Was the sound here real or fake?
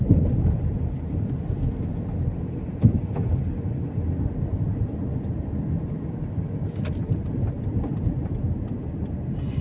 real